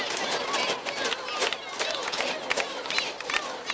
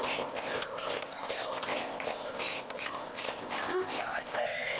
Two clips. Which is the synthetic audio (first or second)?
second